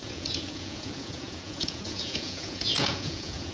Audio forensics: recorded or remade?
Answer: remade